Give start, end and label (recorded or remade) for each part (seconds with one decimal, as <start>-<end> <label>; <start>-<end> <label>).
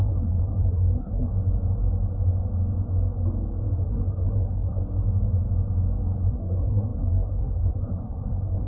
0.0-1.3 remade; 1.3-3.8 recorded; 3.8-4.8 remade; 4.8-6.3 recorded; 6.3-8.7 remade